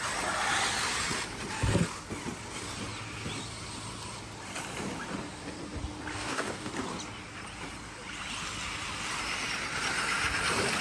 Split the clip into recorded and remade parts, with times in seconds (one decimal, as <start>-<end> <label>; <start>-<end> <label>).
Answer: 0.0-6.1 recorded; 6.1-6.7 remade; 6.7-10.8 recorded